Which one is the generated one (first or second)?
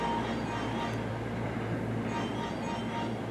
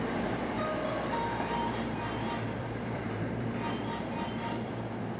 second